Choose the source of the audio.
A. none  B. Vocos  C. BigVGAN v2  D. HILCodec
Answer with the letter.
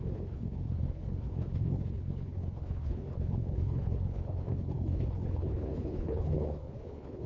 D